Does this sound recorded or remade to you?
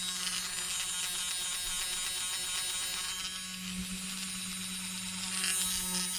recorded